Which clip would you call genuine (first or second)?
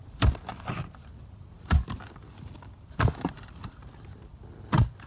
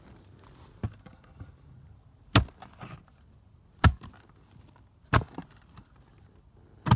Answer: second